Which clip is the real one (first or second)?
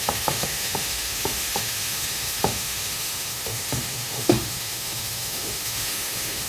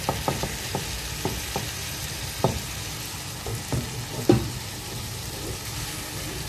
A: second